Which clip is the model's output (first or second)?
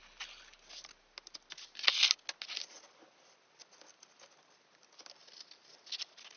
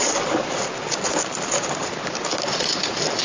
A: second